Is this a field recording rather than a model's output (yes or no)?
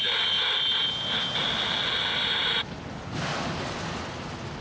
yes